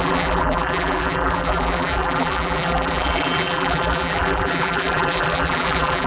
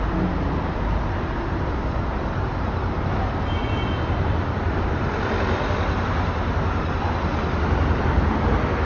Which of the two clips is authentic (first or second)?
second